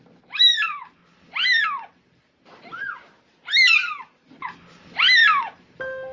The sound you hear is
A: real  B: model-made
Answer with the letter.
A